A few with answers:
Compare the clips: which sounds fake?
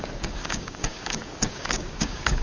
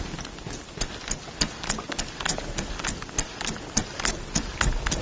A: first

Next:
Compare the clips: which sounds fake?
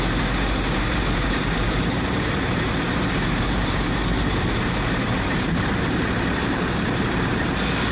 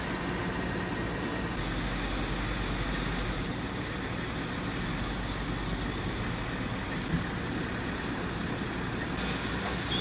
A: first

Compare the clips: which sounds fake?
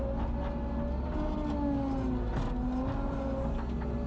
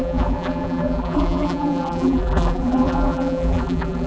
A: second